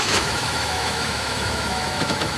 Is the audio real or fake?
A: fake